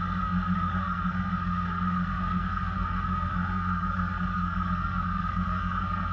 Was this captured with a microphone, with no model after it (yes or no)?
no